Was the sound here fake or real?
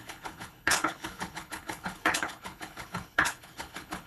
fake